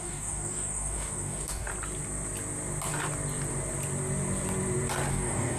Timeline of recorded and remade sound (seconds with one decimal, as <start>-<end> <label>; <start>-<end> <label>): 0.0-1.7 remade; 1.7-5.1 recorded; 5.1-5.6 remade